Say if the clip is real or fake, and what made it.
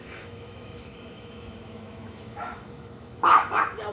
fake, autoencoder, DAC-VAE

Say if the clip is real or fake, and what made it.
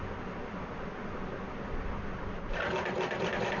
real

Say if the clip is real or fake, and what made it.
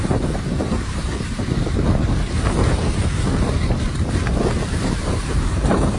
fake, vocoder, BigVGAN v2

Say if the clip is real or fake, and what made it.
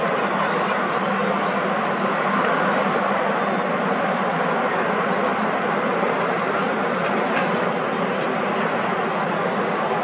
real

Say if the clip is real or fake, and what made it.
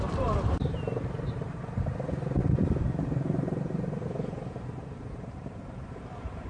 fake, vocoder, BigVGAN v2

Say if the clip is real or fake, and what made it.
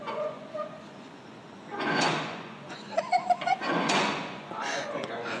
fake, vocoder, Vocos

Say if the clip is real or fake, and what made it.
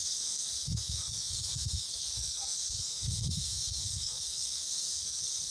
fake, codec, SNAC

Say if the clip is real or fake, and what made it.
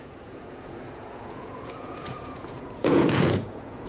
fake, vocoder, Vocos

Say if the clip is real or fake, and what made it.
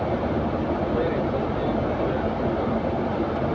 real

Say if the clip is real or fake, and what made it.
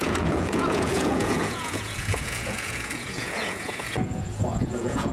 fake, vocoder, Vocos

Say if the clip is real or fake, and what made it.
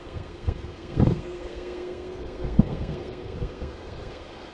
fake, codec, SNAC